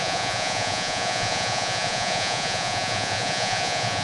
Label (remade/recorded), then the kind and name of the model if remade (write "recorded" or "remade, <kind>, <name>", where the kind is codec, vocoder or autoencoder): remade, vocoder, Vocos